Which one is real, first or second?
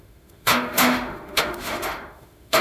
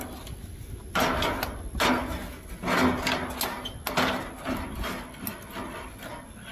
second